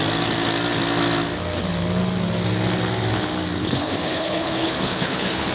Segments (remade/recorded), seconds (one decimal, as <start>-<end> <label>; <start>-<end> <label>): 0.0-3.6 recorded; 3.6-5.5 remade